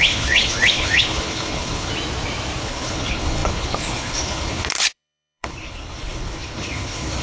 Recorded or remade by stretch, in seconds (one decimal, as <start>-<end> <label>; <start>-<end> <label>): 0.0-1.9 remade; 1.9-2.6 recorded; 2.6-7.2 remade